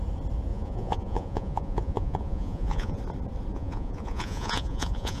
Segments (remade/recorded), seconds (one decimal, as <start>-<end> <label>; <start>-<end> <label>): 0.0-0.5 recorded; 0.5-3.0 remade; 3.0-3.5 recorded; 3.5-5.2 remade